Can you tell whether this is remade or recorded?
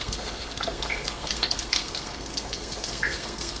remade